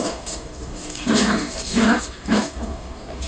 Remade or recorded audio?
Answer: remade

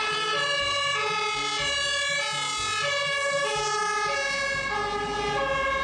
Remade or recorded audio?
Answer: recorded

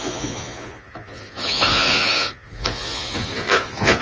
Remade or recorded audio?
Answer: remade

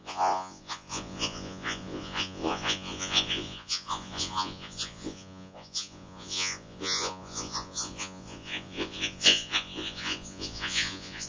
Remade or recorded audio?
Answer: remade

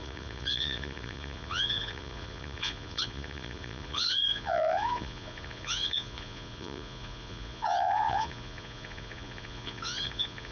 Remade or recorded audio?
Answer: remade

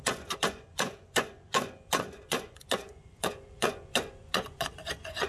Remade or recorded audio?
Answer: remade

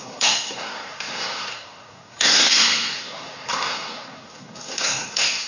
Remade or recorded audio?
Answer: remade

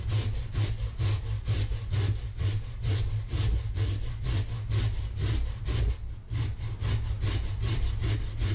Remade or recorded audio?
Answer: recorded